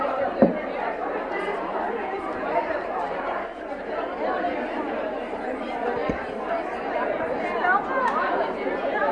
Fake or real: fake